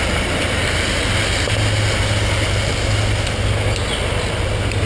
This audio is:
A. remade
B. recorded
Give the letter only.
B